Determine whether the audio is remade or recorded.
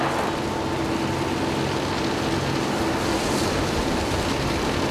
recorded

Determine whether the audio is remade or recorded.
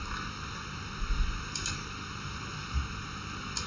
recorded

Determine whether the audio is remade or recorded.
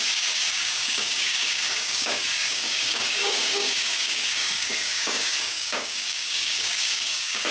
remade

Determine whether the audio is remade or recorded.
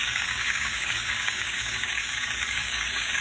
remade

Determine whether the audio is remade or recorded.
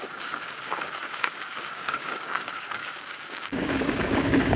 remade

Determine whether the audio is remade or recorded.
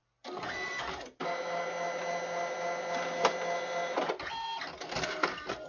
recorded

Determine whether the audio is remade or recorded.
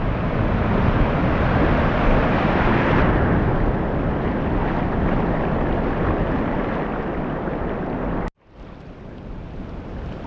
recorded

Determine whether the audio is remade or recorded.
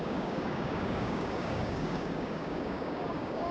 remade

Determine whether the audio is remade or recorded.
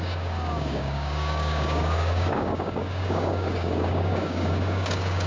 remade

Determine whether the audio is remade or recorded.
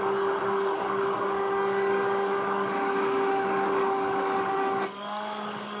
remade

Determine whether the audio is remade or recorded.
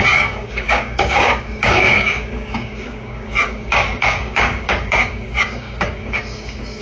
remade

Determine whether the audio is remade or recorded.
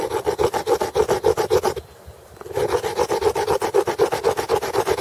recorded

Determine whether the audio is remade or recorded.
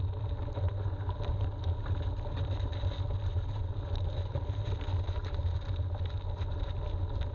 recorded